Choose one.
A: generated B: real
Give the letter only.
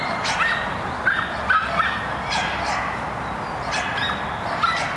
B